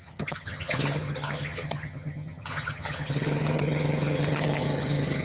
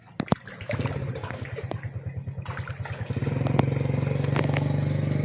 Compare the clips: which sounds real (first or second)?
second